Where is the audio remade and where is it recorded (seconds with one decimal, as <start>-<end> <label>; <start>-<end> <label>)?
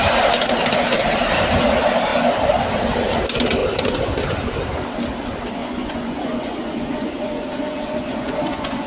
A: 0.0-5.6 recorded; 5.6-8.9 remade